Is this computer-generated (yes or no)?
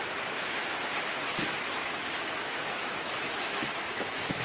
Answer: yes